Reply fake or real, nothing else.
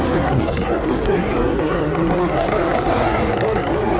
fake